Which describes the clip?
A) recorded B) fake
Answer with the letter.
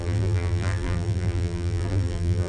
B